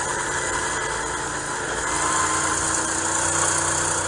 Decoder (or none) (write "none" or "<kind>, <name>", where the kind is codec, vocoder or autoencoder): none